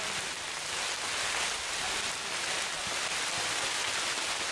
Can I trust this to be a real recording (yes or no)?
yes